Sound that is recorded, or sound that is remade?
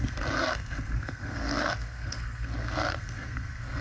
remade